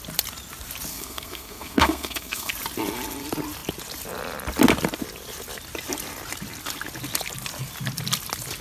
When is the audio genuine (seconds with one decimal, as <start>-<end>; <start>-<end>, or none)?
0.0-0.9; 2.5-8.6